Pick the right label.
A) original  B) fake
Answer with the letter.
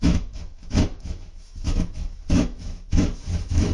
B